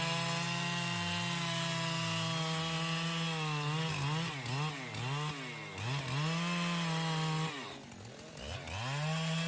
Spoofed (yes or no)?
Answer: no